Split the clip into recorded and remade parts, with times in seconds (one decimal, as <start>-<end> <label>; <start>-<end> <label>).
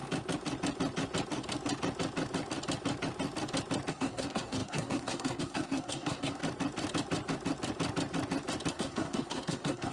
0.0-3.9 recorded; 3.9-6.4 remade; 6.4-8.7 recorded; 8.7-9.9 remade